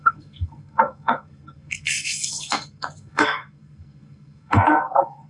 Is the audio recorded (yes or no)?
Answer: no